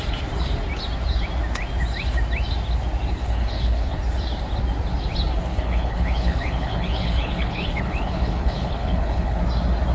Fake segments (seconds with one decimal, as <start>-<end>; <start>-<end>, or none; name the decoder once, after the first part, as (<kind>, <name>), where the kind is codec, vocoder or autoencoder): 3.2-4.0 (codec, HILCodec); 5.5-9.4